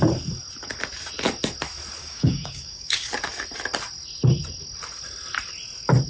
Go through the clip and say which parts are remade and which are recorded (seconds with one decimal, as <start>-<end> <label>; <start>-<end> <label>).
0.0-2.0 recorded; 2.0-3.1 remade; 3.1-6.1 recorded